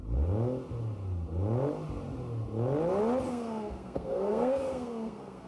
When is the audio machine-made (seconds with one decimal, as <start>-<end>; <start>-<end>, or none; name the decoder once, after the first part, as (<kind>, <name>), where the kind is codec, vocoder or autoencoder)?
3.3-5.5 (codec, SNAC)